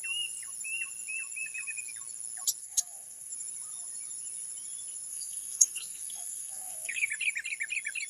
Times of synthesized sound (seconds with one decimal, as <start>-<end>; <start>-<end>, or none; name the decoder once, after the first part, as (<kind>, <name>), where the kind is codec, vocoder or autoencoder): 2.6-3.3 (codec, SNAC); 5.1-7.1